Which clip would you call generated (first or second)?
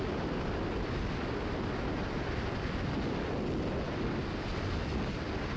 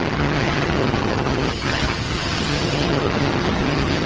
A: second